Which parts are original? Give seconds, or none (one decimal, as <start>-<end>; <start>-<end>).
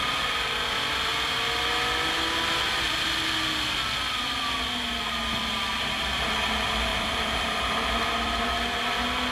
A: 0.0-6.9; 8.4-9.3